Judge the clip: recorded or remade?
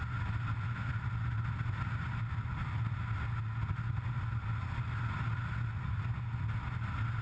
recorded